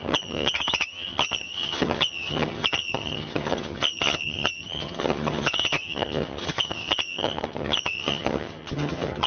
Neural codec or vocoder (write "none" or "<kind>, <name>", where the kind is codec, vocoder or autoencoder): vocoder, HiFi-GAN